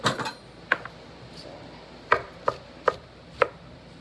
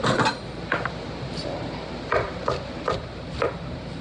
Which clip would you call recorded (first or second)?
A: first